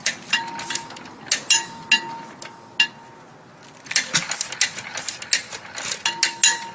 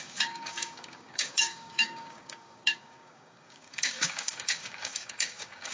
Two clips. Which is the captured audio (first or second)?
first